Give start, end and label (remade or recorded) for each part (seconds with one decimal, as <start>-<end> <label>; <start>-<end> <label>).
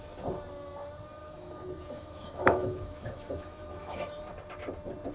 0.0-1.2 recorded; 1.2-4.3 remade; 4.3-5.1 recorded